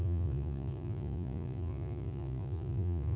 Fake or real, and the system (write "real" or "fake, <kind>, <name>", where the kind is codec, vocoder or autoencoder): fake, vocoder, Vocos